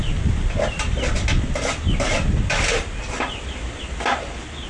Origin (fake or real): real